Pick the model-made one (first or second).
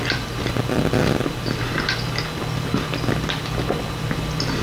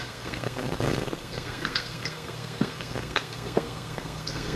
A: second